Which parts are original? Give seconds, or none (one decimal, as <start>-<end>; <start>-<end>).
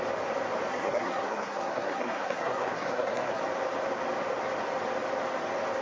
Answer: 0.0-0.7; 3.4-5.8